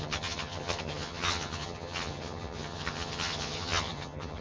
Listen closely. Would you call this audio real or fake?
fake